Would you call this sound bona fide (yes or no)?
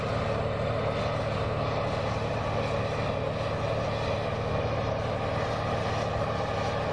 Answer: yes